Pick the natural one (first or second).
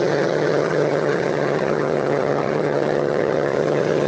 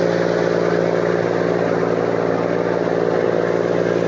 second